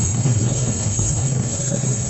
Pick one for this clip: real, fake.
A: fake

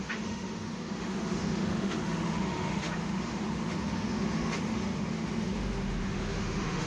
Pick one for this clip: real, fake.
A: fake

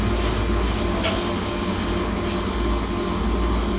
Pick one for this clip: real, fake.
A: real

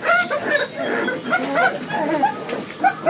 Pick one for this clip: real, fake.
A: real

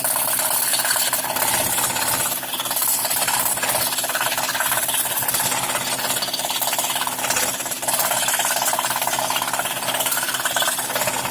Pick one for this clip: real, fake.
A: real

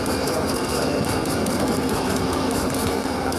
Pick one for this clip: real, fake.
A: fake